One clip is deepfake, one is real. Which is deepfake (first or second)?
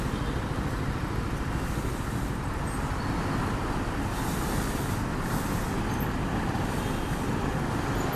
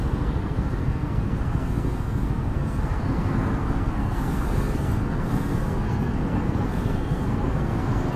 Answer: second